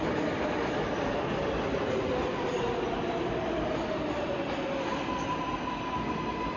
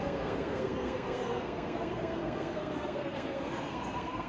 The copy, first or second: second